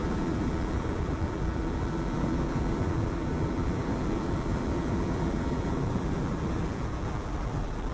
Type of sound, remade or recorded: remade